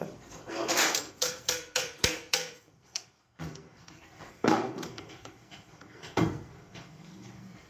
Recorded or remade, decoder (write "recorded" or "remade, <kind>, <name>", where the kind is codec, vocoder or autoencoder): remade, codec, SNAC